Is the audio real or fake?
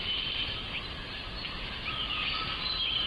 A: real